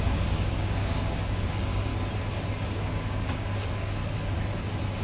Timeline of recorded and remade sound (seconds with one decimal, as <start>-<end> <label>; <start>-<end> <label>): 0.0-1.9 remade; 1.9-2.7 recorded; 2.7-4.0 remade; 4.0-5.0 recorded